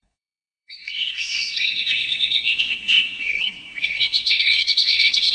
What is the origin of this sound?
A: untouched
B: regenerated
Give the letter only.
B